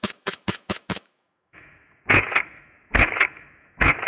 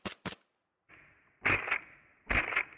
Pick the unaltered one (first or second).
second